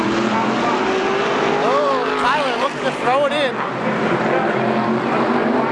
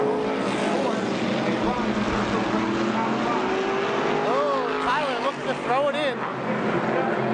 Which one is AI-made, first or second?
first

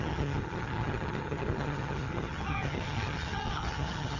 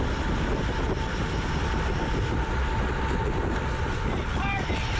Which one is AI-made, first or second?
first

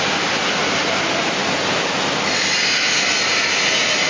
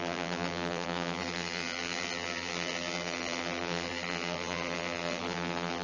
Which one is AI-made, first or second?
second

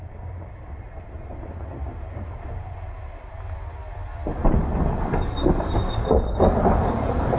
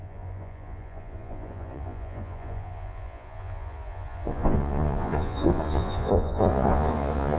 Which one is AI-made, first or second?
second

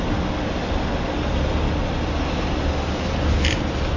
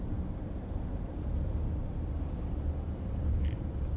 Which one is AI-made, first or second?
second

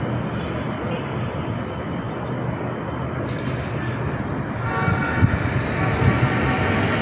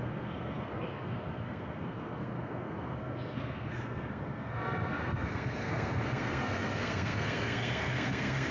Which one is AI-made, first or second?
second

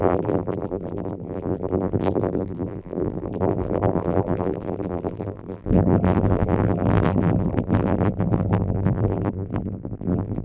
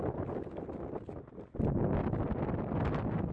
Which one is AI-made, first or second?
first